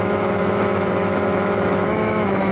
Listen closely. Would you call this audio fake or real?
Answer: fake